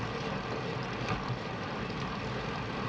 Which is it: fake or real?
real